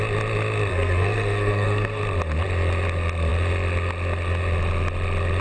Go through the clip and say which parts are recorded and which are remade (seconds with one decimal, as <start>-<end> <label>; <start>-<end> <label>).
0.0-0.7 recorded; 0.7-2.0 remade; 2.0-5.4 recorded